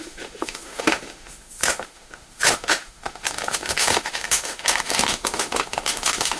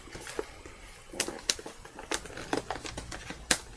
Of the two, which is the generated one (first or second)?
first